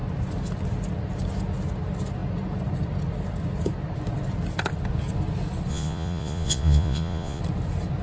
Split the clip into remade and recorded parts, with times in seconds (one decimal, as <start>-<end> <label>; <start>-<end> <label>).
0.0-5.7 recorded; 5.7-7.4 remade; 7.4-8.0 recorded